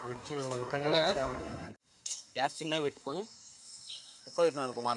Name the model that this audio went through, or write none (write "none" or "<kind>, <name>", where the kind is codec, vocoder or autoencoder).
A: codec, SNAC